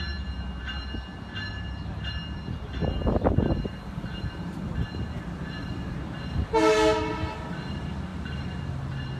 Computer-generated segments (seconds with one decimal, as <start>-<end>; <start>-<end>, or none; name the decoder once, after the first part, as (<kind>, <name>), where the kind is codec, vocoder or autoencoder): none

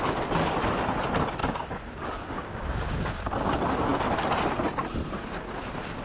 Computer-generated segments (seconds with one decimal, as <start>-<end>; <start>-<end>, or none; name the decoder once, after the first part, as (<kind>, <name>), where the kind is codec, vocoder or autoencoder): 1.4-3.2 (codec, DAC)

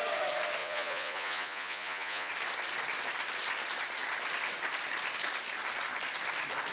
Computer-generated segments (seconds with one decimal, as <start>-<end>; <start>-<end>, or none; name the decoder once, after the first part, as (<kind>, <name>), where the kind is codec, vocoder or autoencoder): 0.6-2.3 (vocoder, Vocos)

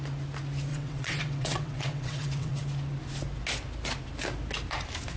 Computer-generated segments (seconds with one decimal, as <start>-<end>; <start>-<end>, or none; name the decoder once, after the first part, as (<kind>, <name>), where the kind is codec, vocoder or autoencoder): 0.7-2.6 (vocoder, WaveNeXt)

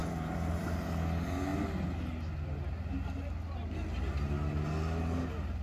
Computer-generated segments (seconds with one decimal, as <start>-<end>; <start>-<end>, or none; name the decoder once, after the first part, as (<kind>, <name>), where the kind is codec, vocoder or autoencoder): none

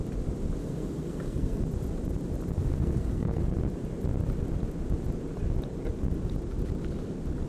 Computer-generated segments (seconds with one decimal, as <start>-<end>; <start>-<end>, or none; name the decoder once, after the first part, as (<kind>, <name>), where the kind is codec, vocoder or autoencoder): 0.6-1.6 (codec, SNAC); 2.6-3.4

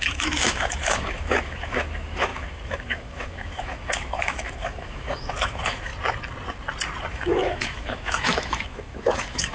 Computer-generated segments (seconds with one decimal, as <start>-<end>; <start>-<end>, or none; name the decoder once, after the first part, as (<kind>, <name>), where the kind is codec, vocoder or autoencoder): 0.0-5.9 (autoencoder, DAC-VAE); 7.1-9.5

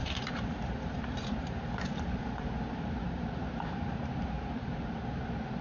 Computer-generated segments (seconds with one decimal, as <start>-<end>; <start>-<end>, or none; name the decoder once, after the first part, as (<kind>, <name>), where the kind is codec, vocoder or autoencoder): 0.0-5.6 (vocoder, BigVGAN v2)